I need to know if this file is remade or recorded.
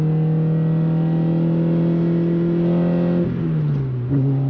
recorded